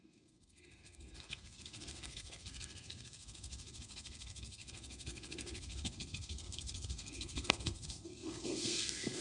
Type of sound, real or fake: fake